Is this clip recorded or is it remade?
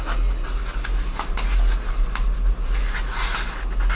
recorded